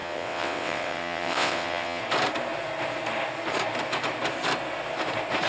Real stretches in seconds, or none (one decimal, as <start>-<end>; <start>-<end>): 2.0-5.5